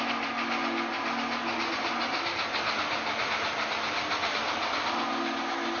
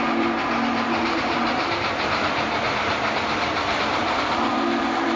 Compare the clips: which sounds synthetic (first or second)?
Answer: second